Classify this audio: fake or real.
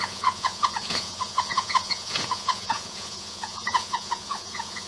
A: fake